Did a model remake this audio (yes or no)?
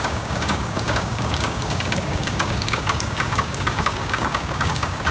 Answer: yes